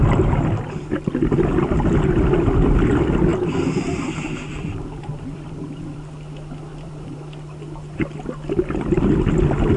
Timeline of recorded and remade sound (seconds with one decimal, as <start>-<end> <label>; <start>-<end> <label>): 0.0-3.3 recorded; 3.3-6.1 remade; 6.1-6.7 recorded; 6.7-7.2 remade; 7.2-9.8 recorded